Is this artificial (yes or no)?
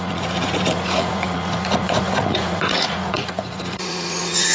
yes